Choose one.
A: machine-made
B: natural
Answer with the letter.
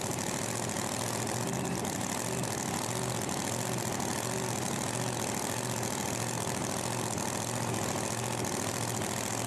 B